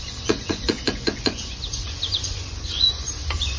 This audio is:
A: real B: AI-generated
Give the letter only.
B